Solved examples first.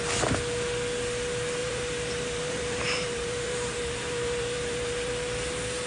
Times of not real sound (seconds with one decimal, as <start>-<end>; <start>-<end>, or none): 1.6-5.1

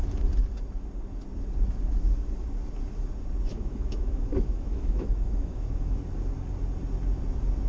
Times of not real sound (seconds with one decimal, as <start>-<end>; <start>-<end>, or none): 3.5-6.0

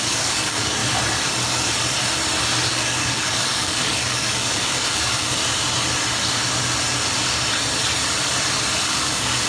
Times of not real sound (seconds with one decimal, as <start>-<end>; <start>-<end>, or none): 0.0-0.8; 2.7-5.4; 8.8-9.5